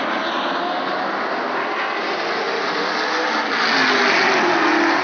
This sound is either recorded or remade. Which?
recorded